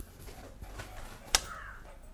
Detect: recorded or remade recorded